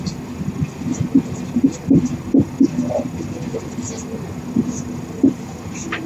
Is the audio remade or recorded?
recorded